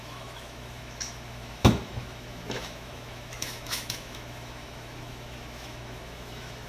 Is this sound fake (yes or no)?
yes